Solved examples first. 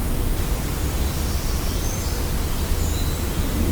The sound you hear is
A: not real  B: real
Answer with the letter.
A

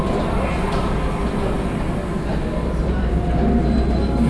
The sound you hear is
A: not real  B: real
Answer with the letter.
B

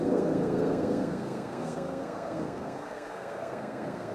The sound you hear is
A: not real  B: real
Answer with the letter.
A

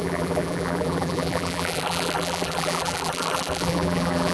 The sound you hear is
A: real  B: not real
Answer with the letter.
B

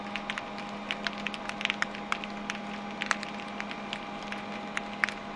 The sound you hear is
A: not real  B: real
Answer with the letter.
B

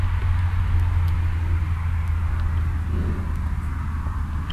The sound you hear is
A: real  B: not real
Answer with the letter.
A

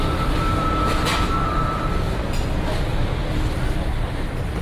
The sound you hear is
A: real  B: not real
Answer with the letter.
A